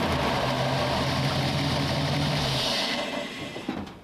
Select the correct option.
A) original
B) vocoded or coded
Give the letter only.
A